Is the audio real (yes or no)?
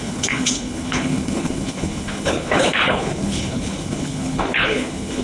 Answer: no